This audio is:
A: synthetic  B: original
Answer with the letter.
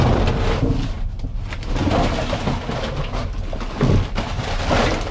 B